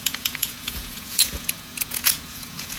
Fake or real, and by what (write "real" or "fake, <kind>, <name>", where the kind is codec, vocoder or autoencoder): fake, vocoder, Vocos